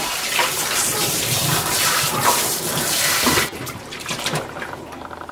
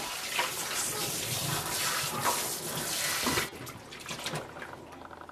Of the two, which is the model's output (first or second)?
first